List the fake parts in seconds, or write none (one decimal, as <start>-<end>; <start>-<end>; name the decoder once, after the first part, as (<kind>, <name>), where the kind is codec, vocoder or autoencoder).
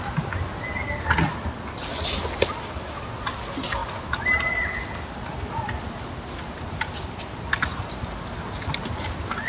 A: none